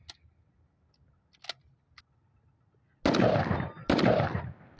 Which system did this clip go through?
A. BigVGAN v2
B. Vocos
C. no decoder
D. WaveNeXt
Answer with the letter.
C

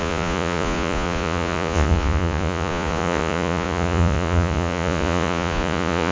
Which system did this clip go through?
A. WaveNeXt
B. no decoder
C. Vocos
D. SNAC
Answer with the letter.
C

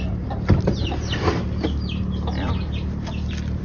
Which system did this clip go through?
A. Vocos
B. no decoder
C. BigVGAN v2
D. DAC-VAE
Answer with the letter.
B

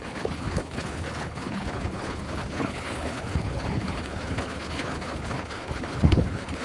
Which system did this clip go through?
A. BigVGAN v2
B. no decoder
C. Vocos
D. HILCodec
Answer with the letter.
D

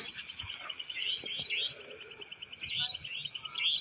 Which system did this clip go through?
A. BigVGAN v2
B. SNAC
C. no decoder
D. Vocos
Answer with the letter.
C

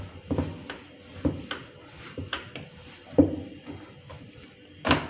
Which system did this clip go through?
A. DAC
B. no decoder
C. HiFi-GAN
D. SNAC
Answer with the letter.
B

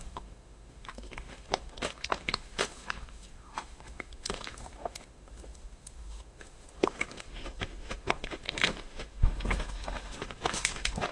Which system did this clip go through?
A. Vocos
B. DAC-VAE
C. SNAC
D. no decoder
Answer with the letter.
B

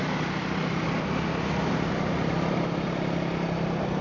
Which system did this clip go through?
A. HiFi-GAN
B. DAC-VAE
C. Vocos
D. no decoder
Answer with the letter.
D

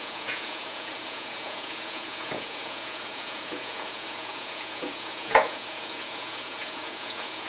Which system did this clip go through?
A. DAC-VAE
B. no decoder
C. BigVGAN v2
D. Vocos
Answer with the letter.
D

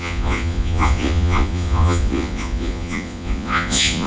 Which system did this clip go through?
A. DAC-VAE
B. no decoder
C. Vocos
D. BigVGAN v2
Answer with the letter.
C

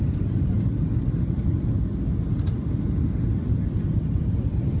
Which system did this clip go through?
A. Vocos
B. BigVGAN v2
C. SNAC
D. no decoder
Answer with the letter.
D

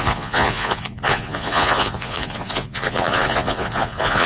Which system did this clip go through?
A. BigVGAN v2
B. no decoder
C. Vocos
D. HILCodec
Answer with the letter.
C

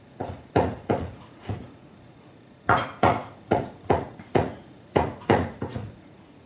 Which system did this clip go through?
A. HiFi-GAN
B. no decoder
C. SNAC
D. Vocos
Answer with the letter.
D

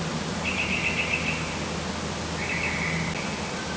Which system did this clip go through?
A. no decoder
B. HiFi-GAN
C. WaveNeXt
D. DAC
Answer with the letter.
A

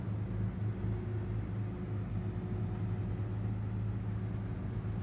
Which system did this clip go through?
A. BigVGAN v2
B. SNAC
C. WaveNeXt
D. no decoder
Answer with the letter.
D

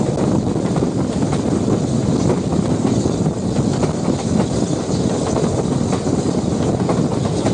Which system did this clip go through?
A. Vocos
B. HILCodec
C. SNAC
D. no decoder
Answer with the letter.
D